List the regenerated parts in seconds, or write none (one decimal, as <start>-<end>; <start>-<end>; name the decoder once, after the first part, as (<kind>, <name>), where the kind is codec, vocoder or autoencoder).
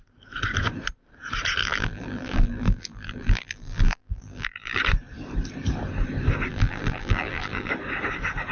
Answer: 1.6-4.8 (vocoder, BigVGAN v2); 6.5-7.7